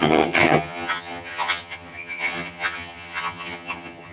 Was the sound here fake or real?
fake